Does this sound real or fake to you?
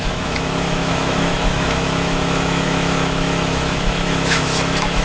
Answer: fake